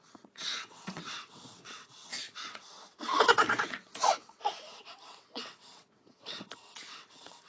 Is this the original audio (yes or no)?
no